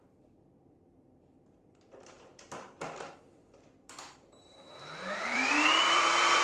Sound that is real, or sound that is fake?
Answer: fake